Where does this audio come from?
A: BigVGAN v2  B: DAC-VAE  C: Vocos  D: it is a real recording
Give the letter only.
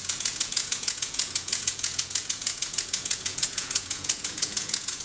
C